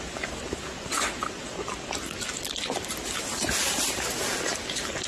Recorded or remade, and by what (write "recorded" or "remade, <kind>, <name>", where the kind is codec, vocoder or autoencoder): recorded